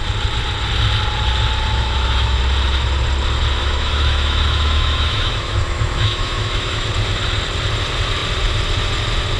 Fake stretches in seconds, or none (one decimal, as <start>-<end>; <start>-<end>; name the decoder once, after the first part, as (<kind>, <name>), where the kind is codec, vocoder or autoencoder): 1.7-2.4 (autoencoder, DAC-VAE); 3.6-6.9